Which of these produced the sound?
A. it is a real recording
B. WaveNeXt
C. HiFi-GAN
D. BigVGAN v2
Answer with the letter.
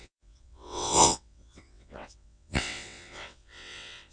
B